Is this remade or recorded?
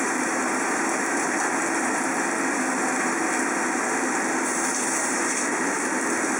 recorded